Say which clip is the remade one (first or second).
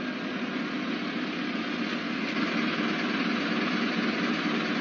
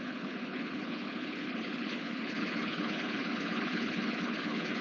second